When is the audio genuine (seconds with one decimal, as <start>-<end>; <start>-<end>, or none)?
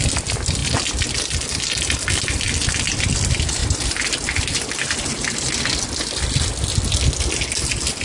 0.0-8.0